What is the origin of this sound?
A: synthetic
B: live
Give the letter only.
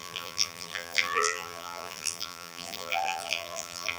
A